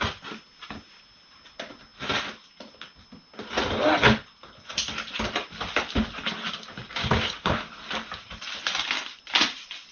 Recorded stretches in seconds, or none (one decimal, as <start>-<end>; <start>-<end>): 0.0-7.0; 7.7-9.9